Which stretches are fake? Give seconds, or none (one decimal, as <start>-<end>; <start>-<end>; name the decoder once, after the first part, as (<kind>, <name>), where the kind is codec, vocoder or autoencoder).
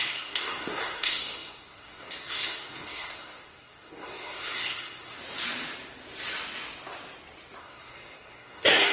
0.0-5.2 (codec, SNAC); 7.6-8.9